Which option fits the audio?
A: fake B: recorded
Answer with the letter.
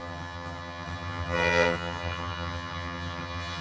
A